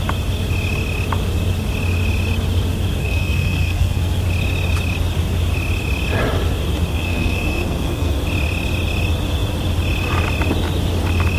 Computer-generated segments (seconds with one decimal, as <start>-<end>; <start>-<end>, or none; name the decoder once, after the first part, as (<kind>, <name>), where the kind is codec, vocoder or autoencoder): 3.0-4.2 (codec, SNAC); 6.9-8.2